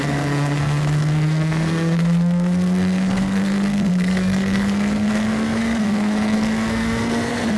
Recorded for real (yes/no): no